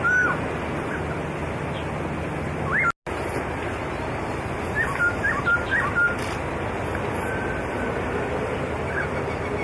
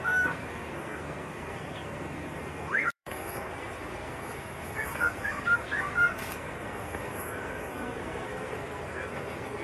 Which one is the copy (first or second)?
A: second